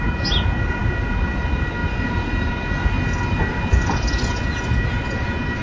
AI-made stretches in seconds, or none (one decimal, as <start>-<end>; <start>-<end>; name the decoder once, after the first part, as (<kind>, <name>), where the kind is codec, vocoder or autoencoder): none

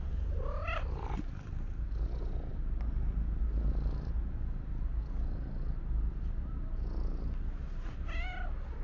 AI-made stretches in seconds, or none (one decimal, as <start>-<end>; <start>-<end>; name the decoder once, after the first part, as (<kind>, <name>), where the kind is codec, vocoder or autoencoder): none

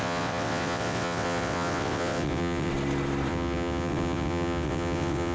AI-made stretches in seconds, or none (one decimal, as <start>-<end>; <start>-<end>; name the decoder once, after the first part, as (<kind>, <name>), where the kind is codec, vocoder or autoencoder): 0.0-2.7 (vocoder, WaveNeXt); 3.3-5.3

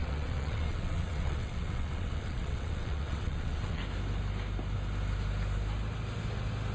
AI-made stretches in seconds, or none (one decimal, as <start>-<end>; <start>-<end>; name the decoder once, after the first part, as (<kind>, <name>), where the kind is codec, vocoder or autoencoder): 0.0-3.8 (vocoder, WaveNeXt)

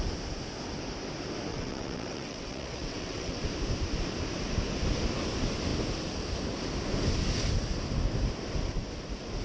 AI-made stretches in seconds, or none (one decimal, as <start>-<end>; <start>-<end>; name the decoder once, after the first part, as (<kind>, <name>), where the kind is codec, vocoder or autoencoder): 1.5-3.4 (vocoder, WaveNeXt)

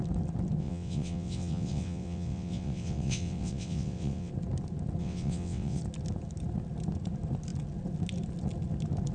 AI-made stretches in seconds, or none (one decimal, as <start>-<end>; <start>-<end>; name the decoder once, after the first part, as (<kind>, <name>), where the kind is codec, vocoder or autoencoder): 0.6-4.3 (vocoder, WaveNeXt); 5.0-5.8